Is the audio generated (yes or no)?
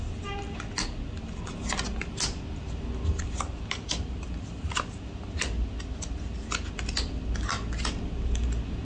no